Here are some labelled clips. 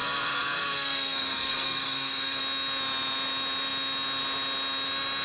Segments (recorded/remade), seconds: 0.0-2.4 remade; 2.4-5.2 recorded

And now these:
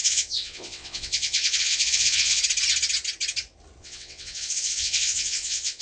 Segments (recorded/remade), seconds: 0.0-2.4 remade; 2.4-3.8 recorded; 3.8-5.8 remade

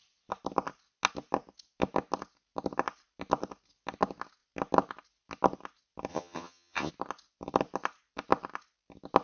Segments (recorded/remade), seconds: 0.0-6.1 recorded; 6.1-6.9 remade; 6.9-9.2 recorded

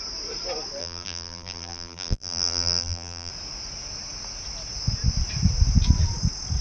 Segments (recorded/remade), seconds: 0.0-0.8 recorded; 0.8-3.3 remade; 3.3-6.6 recorded

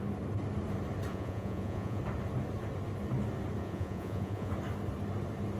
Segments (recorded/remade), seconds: 0.0-1.1 recorded; 1.1-2.0 remade; 2.0-3.6 recorded; 3.6-4.5 remade; 4.5-5.6 recorded

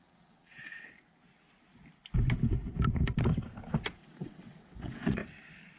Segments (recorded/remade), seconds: 0.0-0.7 remade; 0.7-4.2 recorded; 4.2-5.2 remade; 5.2-5.8 recorded

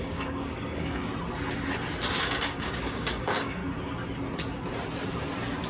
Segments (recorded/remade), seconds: 0.0-1.1 remade; 1.1-2.2 recorded; 2.2-3.6 remade; 3.6-5.7 recorded